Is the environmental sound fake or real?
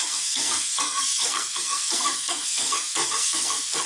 fake